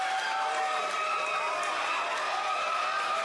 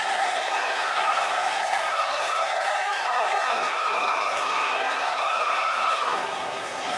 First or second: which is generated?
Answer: second